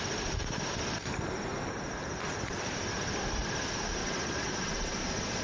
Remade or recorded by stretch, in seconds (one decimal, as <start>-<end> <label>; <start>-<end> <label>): 0.0-4.0 recorded; 4.0-5.4 remade